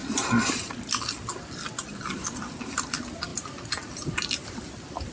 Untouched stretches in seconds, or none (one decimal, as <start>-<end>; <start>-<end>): 0.0-5.1